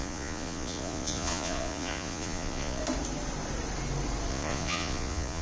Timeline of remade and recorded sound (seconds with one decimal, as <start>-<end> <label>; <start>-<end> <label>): 0.0-2.8 remade; 2.8-4.3 recorded; 4.3-5.4 remade